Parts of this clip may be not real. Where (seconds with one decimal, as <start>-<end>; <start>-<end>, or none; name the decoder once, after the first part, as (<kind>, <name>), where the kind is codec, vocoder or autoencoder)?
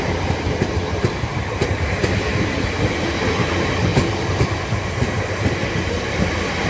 1.3-2.0 (vocoder, BigVGAN v2)